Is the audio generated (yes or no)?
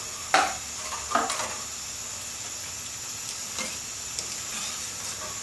no